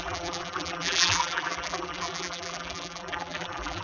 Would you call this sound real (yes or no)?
no